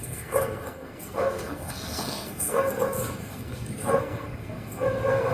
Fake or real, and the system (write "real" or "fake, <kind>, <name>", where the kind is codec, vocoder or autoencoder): fake, codec, SNAC